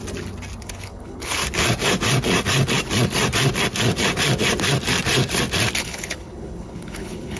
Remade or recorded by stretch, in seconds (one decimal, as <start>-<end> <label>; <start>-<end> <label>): 0.0-0.6 recorded; 0.6-1.4 remade; 1.4-5.8 recorded; 5.8-7.4 remade